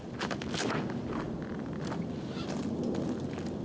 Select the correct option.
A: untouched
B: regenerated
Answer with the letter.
A